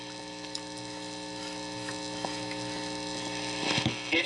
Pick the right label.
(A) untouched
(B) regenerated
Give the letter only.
A